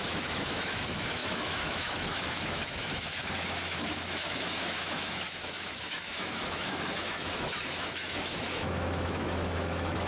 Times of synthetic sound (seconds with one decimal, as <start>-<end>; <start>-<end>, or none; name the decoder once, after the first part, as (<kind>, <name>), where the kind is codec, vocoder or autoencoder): 0.0-10.1 (autoencoder, DAC-VAE)